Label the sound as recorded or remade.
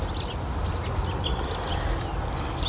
recorded